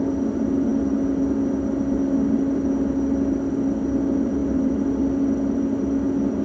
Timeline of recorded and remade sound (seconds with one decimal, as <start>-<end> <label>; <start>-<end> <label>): 0.0-4.4 recorded; 4.4-5.0 remade; 5.0-6.4 recorded